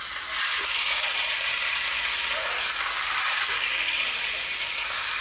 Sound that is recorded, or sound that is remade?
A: recorded